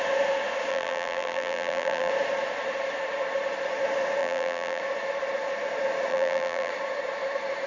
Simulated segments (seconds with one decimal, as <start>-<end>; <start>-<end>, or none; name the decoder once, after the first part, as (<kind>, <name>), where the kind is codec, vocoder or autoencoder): 0.7-2.1 (vocoder, BigVGAN v2); 4.2-4.8; 6.1-6.7